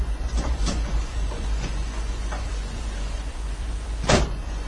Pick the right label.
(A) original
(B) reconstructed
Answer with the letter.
B